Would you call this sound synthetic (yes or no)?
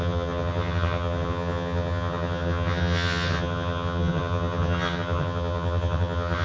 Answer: yes